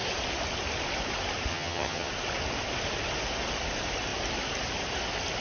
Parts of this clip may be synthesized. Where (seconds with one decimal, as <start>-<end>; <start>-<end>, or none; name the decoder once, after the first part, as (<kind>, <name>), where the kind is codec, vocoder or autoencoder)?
1.5-2.1 (vocoder, HiFi-GAN)